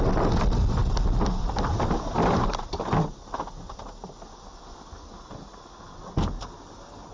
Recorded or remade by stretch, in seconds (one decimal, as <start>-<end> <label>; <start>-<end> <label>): 0.0-7.1 recorded